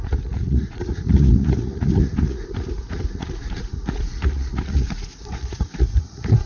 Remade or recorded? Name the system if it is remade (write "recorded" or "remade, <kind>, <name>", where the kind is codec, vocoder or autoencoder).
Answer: remade, vocoder, Vocos